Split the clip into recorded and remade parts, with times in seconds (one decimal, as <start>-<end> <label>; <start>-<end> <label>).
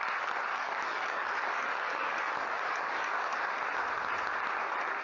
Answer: 0.0-0.5 recorded; 0.5-3.5 remade; 3.5-5.0 recorded